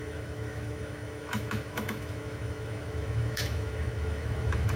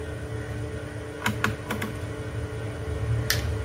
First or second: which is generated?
first